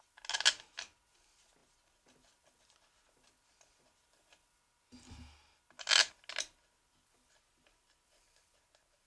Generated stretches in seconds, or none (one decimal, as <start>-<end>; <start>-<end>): none